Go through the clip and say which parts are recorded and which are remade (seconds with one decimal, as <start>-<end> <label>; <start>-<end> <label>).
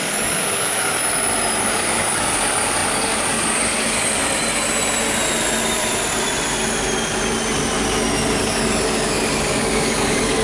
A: 0.0-1.0 remade; 1.0-1.6 recorded; 1.6-4.2 remade; 4.2-8.4 recorded; 8.4-10.4 remade